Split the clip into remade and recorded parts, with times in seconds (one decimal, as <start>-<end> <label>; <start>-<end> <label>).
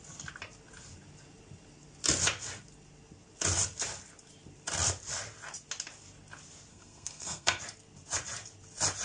0.0-6.7 recorded; 6.7-7.6 remade; 7.6-9.0 recorded